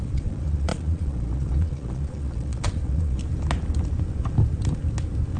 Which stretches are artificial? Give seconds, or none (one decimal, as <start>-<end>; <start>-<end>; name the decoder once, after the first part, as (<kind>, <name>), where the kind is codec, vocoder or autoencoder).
0.0-3.2 (vocoder, Vocos)